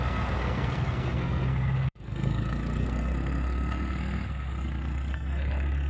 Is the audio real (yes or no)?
no